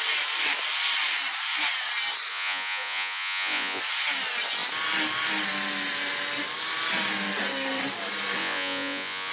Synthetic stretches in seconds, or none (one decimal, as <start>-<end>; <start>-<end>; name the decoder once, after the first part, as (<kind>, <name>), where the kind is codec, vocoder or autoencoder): 2.3-3.8 (vocoder, Vocos); 8.4-9.3